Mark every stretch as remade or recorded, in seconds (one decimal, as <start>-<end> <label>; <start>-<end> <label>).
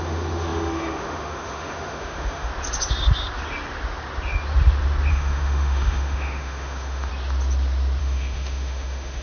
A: 0.0-2.5 remade; 2.5-5.1 recorded; 5.1-7.1 remade; 7.1-8.0 recorded; 8.0-9.2 remade